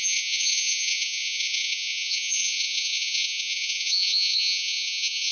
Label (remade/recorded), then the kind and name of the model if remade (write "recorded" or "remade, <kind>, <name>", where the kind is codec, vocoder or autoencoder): remade, vocoder, Vocos